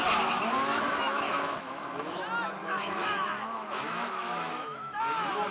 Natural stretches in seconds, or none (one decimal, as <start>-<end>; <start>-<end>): 0.0-0.7; 2.2-2.6; 5.0-5.5